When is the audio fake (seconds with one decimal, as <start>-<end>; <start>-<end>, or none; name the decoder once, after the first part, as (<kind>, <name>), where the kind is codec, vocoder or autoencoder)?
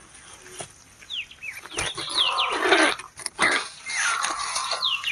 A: none